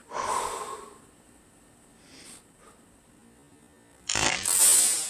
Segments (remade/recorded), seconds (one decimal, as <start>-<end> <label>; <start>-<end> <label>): 0.0-3.1 remade; 3.1-3.9 recorded; 3.9-4.6 remade; 4.6-5.1 recorded